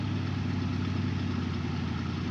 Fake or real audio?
real